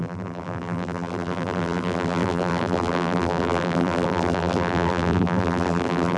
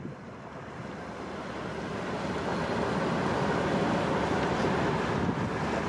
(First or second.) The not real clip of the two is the first